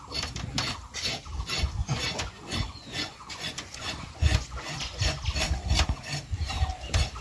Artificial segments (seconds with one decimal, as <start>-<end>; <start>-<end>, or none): 1.8-5.2